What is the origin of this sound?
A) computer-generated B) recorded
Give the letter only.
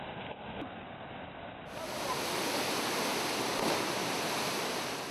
B